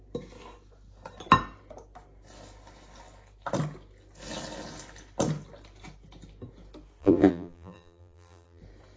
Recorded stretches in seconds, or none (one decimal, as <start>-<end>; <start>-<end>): 0.0-7.0; 8.6-9.0